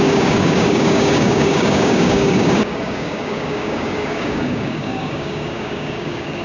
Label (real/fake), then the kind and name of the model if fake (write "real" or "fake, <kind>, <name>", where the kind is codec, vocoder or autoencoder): fake, codec, DAC